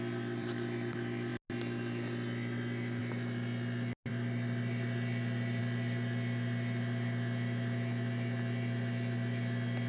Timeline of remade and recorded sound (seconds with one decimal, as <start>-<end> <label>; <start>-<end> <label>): 0.0-9.9 recorded